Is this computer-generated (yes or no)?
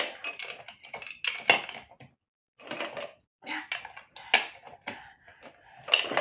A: no